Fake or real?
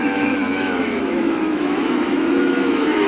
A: fake